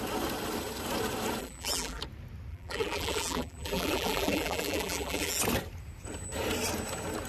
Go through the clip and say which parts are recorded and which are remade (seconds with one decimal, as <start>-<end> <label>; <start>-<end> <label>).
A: 0.0-1.4 recorded; 1.4-2.0 remade; 2.0-2.5 recorded; 2.5-5.4 remade; 5.4-7.3 recorded